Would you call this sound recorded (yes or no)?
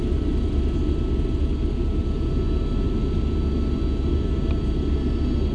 yes